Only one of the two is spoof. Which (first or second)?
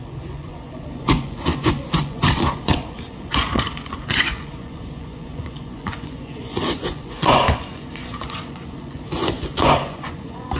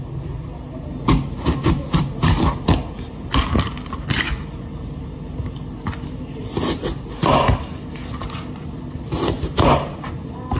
first